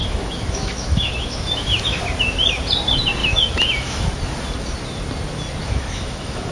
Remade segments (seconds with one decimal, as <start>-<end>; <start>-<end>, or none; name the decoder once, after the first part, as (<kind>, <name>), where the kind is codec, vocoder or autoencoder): 0.0-2.0 (autoencoder, DAC-VAE); 3.2-4.0; 5.6-6.5